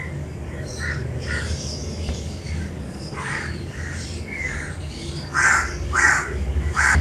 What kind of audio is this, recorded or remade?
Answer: remade